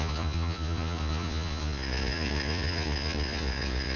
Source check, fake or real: fake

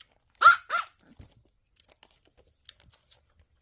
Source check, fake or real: real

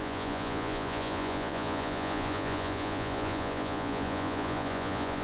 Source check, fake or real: fake